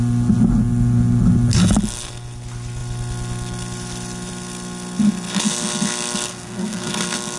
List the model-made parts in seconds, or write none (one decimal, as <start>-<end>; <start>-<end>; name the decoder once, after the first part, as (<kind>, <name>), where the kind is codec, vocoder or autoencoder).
6.3-6.9 (codec, SNAC)